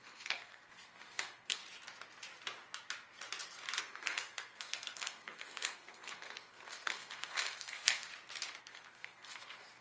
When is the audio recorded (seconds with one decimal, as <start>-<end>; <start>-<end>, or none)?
1.6-3.8; 8.1-8.6